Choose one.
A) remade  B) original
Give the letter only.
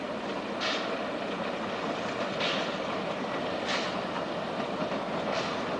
B